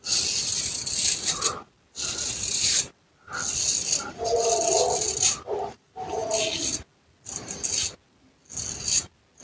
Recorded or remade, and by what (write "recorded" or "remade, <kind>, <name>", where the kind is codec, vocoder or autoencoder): recorded